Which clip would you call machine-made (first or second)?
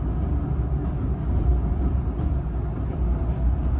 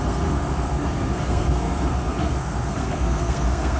second